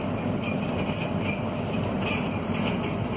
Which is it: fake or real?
real